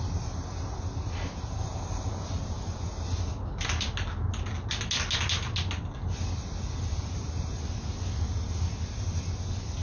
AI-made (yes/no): no